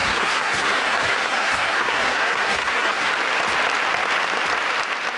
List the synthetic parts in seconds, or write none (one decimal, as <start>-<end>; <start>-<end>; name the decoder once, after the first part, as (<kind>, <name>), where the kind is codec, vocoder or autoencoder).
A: 0.0-3.1 (codec, SNAC)